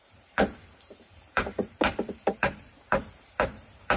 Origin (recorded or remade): remade